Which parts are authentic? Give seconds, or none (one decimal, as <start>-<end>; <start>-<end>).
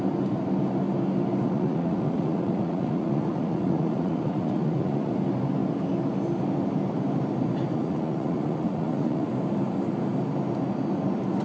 0.0-1.4; 5.1-7.7; 9.3-11.4